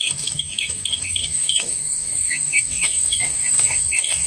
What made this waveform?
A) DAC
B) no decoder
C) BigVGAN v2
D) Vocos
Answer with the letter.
A